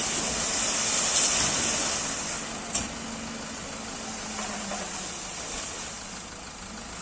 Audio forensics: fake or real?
real